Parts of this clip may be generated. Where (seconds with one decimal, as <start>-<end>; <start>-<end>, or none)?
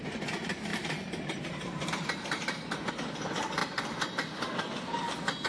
0.7-2.9